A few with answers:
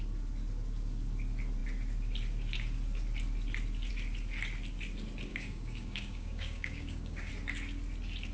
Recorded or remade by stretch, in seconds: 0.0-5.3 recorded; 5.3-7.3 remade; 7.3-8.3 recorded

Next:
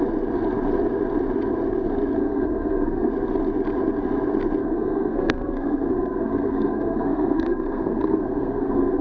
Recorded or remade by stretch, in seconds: 0.0-2.2 recorded; 2.2-3.1 remade; 3.1-4.6 recorded; 4.6-9.0 remade

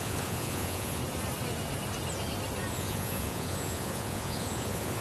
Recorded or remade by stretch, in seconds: 0.0-1.0 remade; 1.0-2.7 recorded; 2.7-5.0 remade

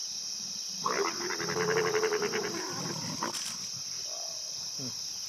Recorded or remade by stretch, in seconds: 0.0-5.3 recorded

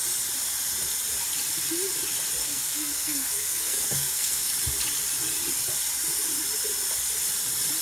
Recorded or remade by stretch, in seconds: 0.0-2.4 recorded; 2.4-4.5 remade; 4.5-7.8 recorded

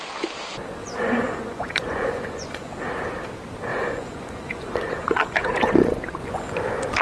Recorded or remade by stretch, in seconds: 0.0-0.8 recorded; 0.8-2.7 remade; 2.7-3.7 recorded; 3.7-5.7 remade; 5.7-6.2 recorded; 6.2-7.0 remade

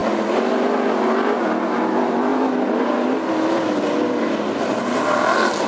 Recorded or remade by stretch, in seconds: 0.0-5.7 recorded